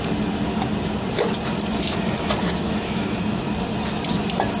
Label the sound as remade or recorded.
recorded